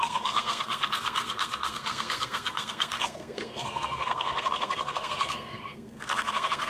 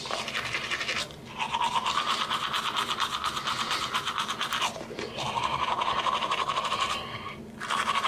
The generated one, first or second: first